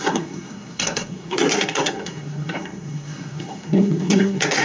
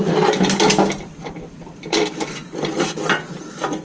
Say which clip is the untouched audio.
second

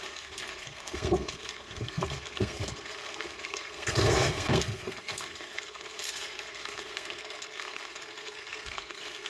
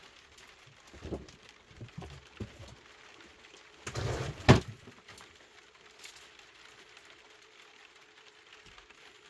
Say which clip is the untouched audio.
second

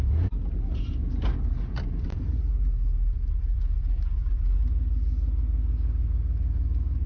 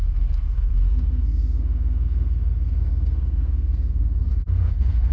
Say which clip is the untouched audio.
first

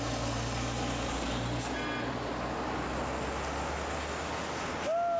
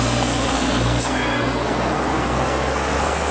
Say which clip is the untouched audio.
first